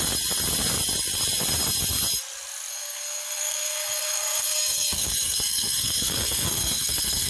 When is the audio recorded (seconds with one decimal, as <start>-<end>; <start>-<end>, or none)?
0.0-2.7